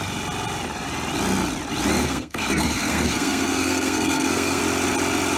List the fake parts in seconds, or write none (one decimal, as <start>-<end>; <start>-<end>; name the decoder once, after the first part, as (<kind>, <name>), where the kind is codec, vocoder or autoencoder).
2.0-4.6 (codec, SNAC)